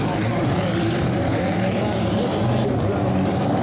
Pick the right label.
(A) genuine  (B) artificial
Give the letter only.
B